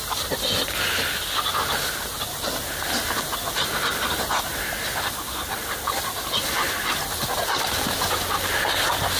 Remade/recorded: recorded